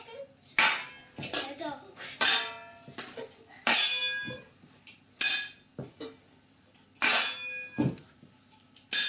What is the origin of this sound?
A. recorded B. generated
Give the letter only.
A